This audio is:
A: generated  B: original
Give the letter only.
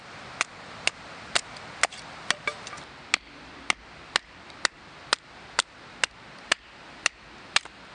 B